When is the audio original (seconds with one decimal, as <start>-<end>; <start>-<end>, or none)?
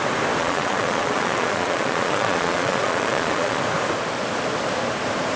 0.0-0.4; 3.6-5.4